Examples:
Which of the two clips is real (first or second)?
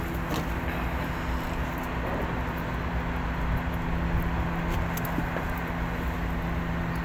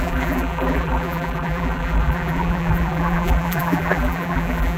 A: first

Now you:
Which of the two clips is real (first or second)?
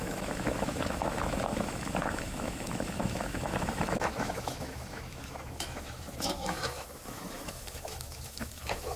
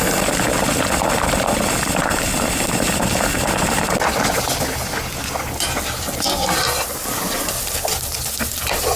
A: second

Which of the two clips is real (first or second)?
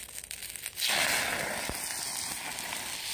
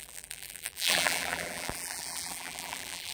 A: first